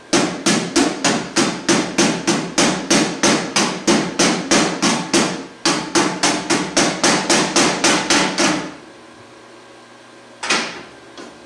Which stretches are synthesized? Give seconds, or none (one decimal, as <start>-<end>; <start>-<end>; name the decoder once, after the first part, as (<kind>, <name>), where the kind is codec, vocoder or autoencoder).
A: none